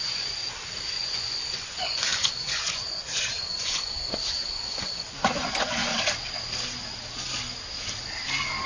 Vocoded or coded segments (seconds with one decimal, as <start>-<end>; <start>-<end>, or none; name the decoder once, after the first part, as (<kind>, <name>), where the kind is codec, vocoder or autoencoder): 0.0-0.4 (vocoder, Vocos); 0.9-5.9